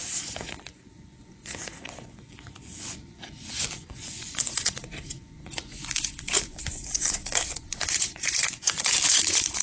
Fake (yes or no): yes